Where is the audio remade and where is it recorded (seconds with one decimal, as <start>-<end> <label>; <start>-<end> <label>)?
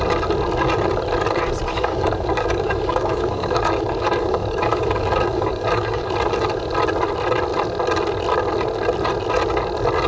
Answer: 0.0-1.7 recorded; 1.7-6.1 remade; 6.1-10.1 recorded